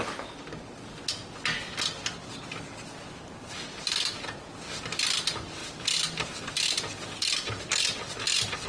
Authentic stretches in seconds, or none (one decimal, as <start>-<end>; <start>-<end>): 0.0-8.7